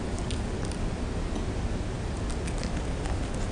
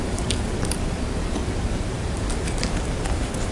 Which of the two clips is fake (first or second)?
second